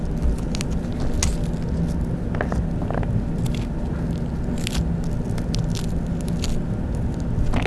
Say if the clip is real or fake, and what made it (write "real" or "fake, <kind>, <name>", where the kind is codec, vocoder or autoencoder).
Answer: real